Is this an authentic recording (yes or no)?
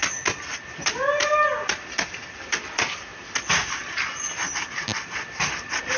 yes